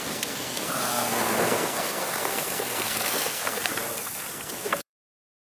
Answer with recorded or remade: remade